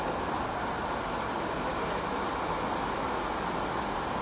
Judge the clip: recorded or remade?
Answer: recorded